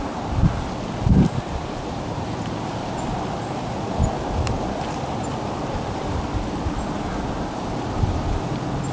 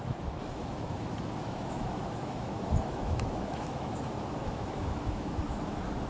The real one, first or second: first